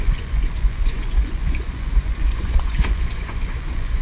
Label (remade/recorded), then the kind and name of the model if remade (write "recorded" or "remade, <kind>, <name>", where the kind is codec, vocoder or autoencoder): remade, vocoder, Vocos